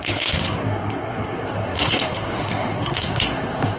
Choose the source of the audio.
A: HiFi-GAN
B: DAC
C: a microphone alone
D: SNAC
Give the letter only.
D